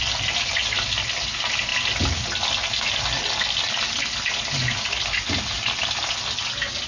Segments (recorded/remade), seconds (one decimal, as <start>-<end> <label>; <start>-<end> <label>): 0.0-6.9 recorded